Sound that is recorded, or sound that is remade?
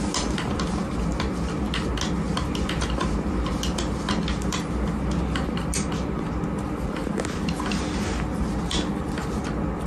recorded